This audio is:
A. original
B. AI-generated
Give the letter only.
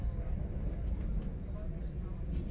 A